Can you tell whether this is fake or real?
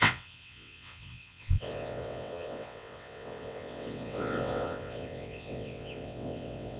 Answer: fake